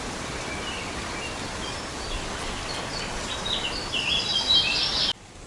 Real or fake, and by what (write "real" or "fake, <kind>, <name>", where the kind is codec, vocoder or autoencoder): real